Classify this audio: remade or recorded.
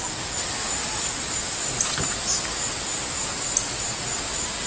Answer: recorded